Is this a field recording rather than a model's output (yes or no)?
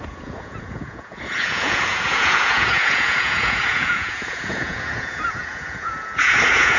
no